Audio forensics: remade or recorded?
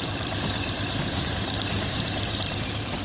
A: remade